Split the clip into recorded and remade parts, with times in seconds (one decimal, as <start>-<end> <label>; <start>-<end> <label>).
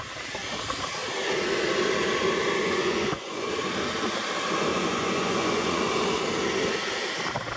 0.0-2.6 recorded; 2.6-3.5 remade; 3.5-4.7 recorded; 4.7-5.8 remade; 5.8-7.6 recorded